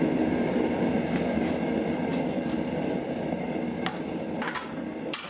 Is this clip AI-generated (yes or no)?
no